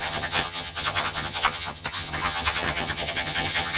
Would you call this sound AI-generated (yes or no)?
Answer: yes